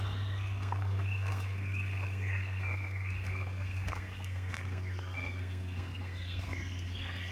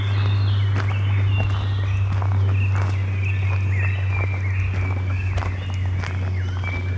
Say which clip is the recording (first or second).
second